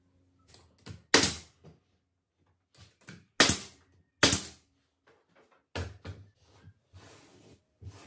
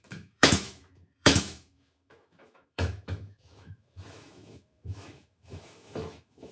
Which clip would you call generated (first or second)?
second